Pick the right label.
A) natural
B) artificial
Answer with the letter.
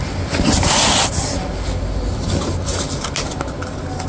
A